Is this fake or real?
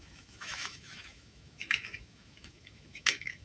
fake